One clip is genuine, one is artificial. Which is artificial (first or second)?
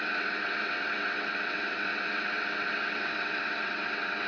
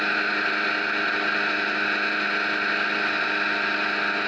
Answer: first